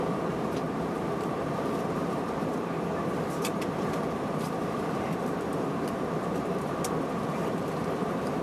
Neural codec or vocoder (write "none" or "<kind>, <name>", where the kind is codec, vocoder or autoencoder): vocoder, BigVGAN v2